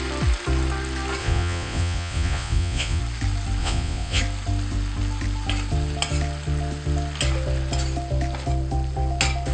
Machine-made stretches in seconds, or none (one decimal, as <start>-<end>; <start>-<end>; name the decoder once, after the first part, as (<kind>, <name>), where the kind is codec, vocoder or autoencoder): 1.2-3.0 (vocoder, Vocos); 3.6-4.2

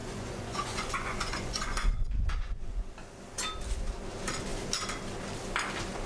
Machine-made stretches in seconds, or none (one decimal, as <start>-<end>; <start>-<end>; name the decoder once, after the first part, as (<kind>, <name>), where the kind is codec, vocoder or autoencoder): 0.0-2.9 (vocoder, Vocos)